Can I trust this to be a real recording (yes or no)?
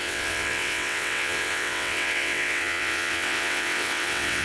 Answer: no